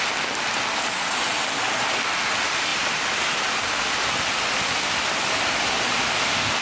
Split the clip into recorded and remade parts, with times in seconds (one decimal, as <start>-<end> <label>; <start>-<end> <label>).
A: 0.0-2.7 recorded; 2.7-3.5 remade; 3.5-6.6 recorded